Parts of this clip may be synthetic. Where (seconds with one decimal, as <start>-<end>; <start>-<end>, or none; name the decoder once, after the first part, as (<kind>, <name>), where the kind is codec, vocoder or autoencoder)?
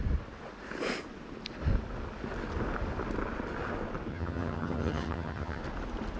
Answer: 4.1-5.6 (vocoder, HiFi-GAN)